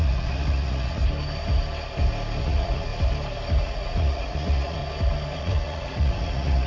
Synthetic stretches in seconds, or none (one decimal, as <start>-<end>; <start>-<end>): 0.0-1.0; 2.4-2.9; 3.6-4.8; 5.4-6.7